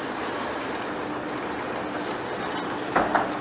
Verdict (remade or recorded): recorded